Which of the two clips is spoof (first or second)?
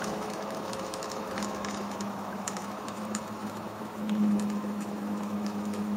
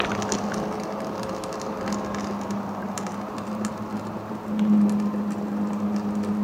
first